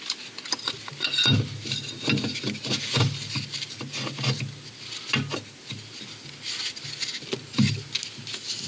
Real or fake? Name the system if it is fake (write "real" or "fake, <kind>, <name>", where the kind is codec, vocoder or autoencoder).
real